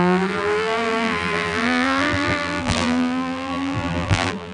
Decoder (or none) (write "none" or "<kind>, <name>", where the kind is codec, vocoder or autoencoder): vocoder, BigVGAN v2